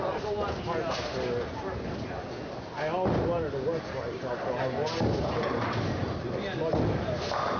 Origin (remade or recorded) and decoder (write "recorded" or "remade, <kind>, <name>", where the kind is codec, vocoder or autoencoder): recorded